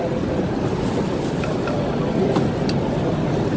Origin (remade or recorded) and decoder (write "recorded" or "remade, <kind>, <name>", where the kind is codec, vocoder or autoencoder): recorded